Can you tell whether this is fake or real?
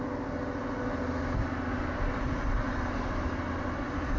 real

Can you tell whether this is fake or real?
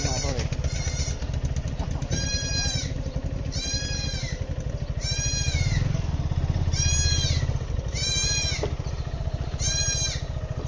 real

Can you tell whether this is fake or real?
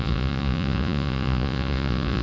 fake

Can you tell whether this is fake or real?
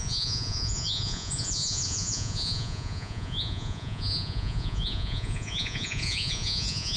fake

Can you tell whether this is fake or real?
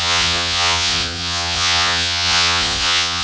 fake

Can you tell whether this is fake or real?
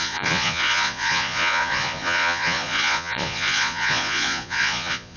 fake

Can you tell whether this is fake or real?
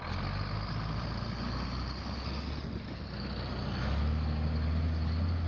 real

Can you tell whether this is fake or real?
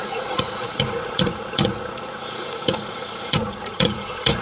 fake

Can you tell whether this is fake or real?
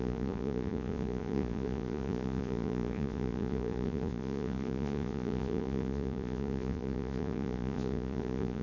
fake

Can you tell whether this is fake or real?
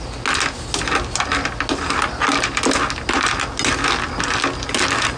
real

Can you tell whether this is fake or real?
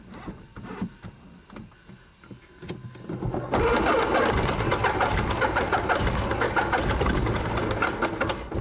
real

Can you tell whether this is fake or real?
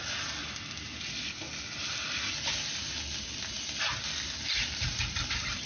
real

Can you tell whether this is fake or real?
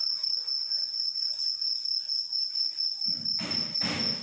real